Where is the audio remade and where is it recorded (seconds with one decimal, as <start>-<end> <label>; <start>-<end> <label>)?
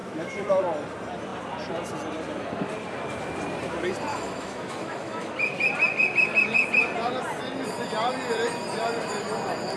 0.0-0.6 remade; 0.6-4.1 recorded; 4.1-5.3 remade; 5.3-9.8 recorded